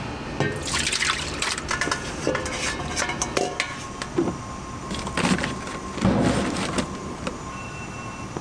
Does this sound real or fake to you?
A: real